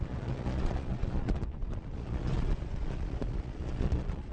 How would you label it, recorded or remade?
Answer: remade